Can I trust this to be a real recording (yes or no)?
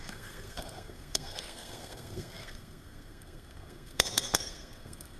no